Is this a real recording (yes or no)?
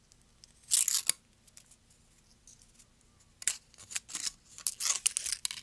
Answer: yes